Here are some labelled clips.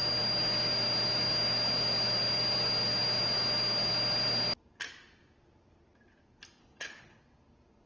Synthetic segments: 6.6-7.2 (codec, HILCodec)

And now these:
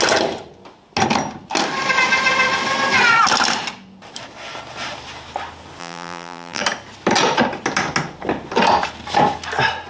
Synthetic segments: 5.8-6.6 (vocoder, BigVGAN v2)

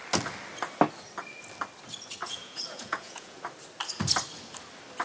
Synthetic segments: 2.2-3.4 (vocoder, Vocos)